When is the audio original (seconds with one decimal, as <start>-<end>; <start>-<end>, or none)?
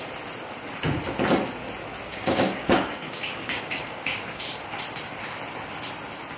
0.0-2.1; 4.4-6.4